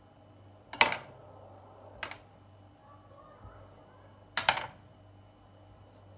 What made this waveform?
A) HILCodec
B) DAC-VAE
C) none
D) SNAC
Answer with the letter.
C